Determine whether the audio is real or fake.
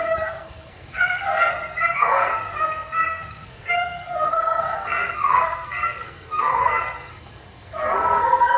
fake